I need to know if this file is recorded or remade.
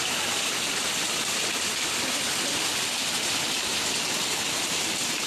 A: recorded